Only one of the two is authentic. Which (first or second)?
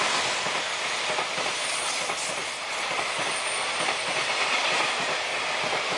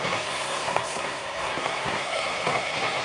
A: first